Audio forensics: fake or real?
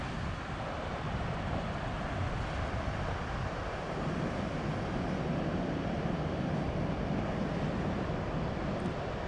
real